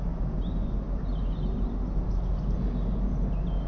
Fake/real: real